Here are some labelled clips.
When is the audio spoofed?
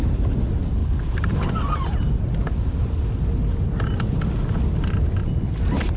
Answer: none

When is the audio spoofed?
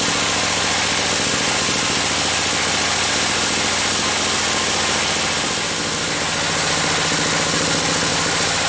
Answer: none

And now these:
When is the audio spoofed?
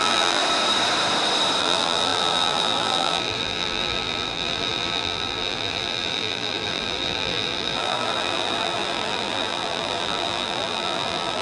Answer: 0.0-0.4; 1.6-11.4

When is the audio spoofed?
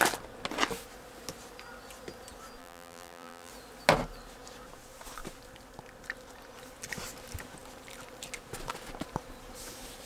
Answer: 2.6-3.5